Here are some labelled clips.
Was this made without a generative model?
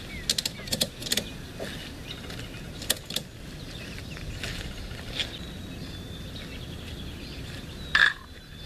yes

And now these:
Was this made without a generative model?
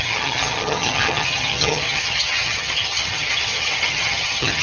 no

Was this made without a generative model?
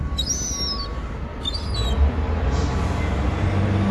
yes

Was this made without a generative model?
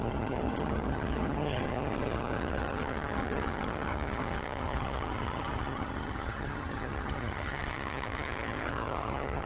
no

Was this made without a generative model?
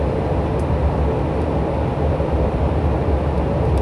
yes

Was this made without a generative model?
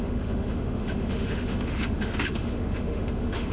no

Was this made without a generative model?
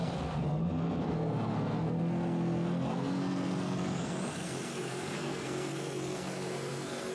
no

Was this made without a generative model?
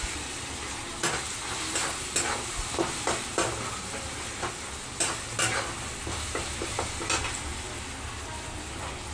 yes